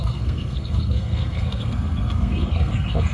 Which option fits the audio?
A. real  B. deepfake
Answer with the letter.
B